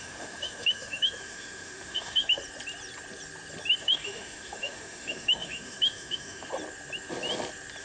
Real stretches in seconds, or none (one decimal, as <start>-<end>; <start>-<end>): 2.4-3.8; 6.5-7.8